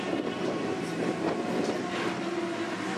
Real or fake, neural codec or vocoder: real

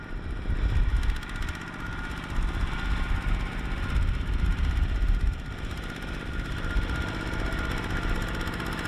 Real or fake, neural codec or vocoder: real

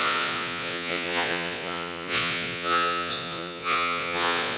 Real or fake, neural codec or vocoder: fake, vocoder, Vocos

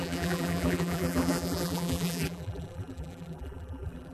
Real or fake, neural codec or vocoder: fake, vocoder, BigVGAN v2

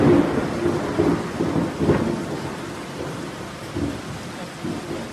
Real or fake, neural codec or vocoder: real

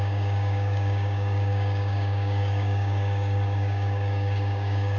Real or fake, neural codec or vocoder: fake, codec, DAC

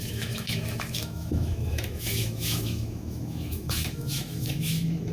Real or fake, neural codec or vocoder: fake, autoencoder, DAC-VAE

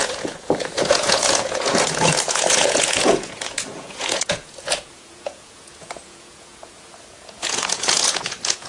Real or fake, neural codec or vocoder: fake, vocoder, Vocos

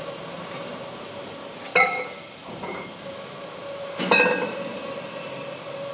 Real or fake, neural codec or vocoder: real